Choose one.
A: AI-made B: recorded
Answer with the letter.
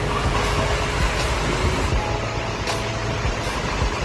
B